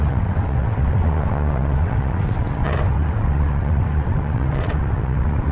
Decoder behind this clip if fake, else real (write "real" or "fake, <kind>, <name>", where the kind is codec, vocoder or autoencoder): fake, vocoder, WaveNeXt